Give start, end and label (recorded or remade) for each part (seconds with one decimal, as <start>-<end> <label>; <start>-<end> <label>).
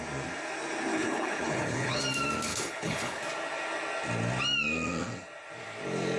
0.0-0.9 recorded; 0.9-2.0 remade; 2.0-2.5 recorded; 2.5-3.2 remade; 3.2-6.2 recorded